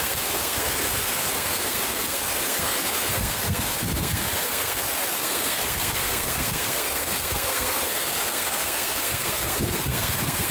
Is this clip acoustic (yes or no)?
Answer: no